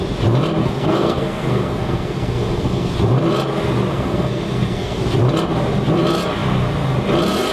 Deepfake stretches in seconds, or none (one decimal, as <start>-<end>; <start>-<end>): 0.6-2.9; 3.9-5.0